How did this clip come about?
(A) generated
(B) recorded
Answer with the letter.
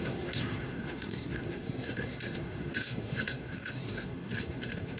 A